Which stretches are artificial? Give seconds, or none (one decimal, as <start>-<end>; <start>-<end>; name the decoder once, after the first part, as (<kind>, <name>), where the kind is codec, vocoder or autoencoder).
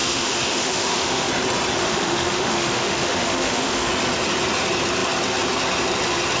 0.0-1.3 (autoencoder, DAC-VAE); 1.8-3.9